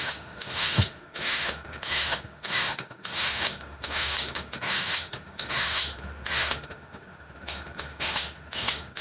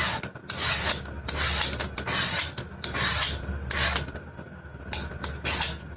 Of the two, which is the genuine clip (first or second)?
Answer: second